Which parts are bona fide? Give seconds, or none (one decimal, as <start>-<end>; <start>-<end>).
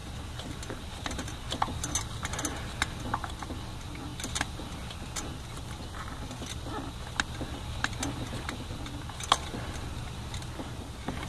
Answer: 0.0-11.3